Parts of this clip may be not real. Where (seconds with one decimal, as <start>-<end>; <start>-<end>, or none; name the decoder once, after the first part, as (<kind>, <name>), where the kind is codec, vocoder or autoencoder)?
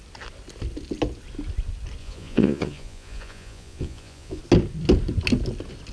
2.0-4.4 (vocoder, Vocos)